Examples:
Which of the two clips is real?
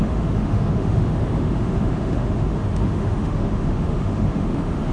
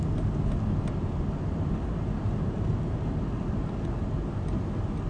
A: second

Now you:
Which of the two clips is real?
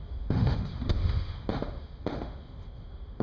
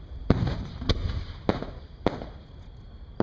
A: second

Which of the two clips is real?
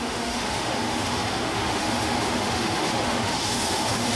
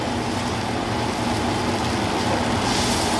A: second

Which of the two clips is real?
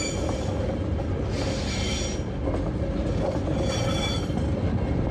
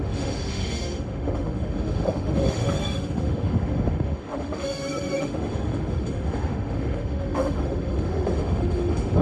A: first